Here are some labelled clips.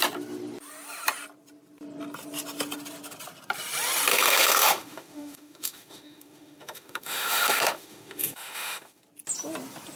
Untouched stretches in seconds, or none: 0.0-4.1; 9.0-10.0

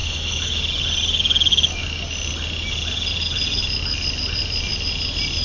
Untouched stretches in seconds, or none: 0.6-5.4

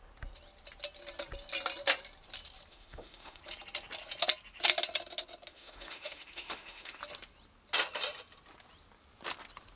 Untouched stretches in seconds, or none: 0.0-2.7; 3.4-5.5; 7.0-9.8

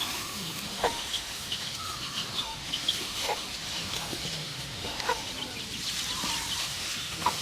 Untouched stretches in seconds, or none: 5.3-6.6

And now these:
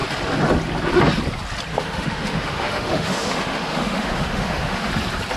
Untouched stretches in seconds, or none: 0.0-1.7; 4.9-5.4